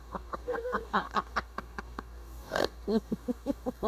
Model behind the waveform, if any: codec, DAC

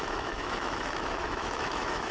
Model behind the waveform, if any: autoencoder, DAC-VAE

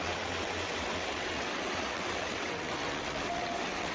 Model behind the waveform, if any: vocoder, WaveNeXt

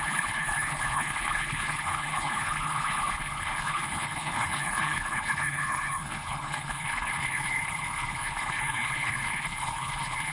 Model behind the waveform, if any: codec, HILCodec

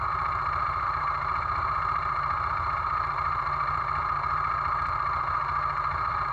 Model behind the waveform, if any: none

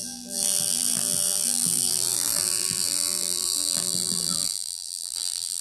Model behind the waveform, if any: vocoder, BigVGAN v2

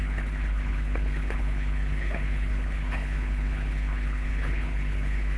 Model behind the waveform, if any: codec, HILCodec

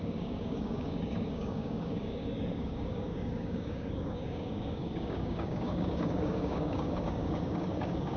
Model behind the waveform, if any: codec, DAC